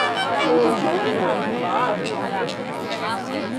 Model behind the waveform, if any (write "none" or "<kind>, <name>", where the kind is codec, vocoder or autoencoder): vocoder, BigVGAN v2